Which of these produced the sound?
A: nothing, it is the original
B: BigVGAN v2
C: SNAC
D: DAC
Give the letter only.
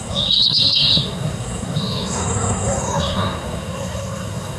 C